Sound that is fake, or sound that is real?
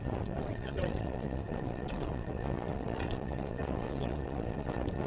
fake